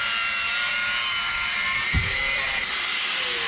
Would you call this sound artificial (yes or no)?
no